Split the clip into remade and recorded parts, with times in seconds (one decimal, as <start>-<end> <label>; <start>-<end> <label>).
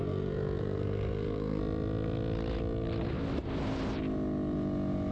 0.0-1.6 remade; 1.6-5.1 recorded